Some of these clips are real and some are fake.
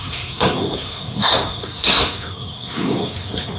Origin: fake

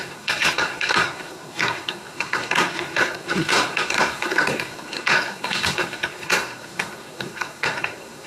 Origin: fake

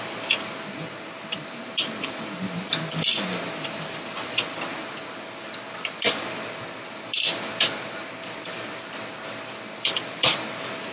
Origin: real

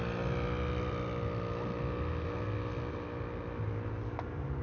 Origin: real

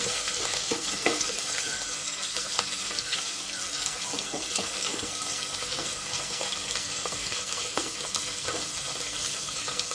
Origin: fake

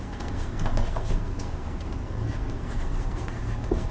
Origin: fake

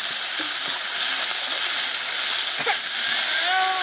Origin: real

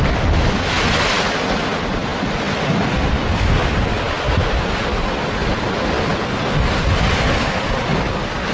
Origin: real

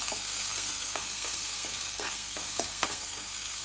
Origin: fake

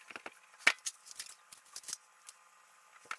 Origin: real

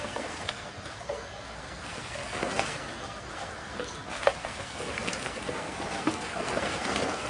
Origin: fake